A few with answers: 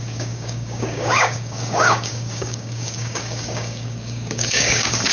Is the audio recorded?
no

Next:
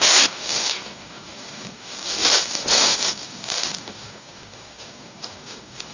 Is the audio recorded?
no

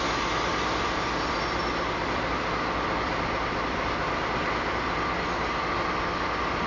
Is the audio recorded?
yes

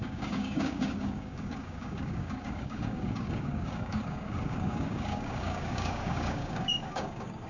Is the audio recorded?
no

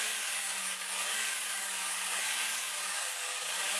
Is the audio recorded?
no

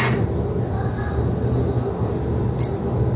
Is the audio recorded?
yes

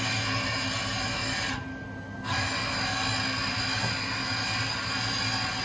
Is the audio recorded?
yes